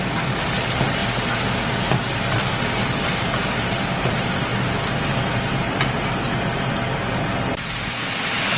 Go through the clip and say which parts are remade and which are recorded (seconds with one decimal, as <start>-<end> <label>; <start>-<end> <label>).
0.0-8.6 recorded